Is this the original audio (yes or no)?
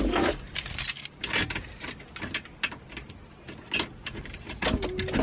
yes